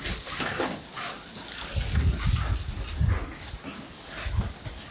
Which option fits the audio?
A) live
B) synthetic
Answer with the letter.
A